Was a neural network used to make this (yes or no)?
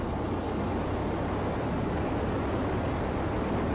no